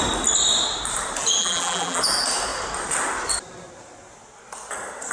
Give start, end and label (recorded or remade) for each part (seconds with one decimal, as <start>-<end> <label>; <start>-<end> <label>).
0.0-1.4 recorded; 1.4-2.0 remade; 2.0-5.1 recorded